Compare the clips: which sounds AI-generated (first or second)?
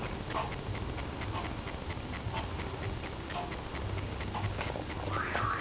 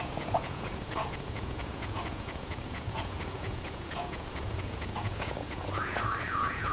second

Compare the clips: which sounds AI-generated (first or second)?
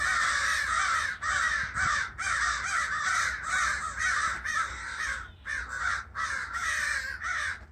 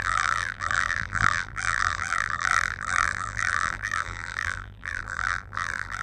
second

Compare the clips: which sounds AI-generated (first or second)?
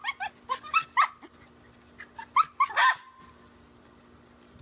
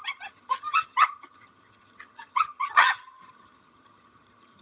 second